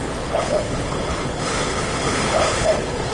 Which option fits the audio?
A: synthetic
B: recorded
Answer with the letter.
A